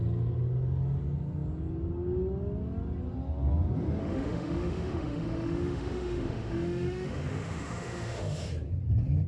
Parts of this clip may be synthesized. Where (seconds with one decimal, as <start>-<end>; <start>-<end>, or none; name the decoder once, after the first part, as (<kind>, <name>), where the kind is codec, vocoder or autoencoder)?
4.0-8.5 (autoencoder, DAC-VAE)